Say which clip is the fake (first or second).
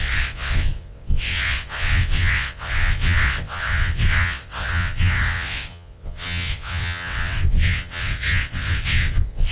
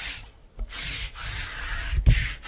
first